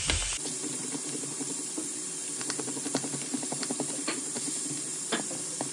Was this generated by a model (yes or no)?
yes